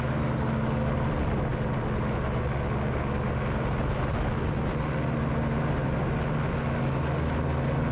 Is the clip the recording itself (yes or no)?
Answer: yes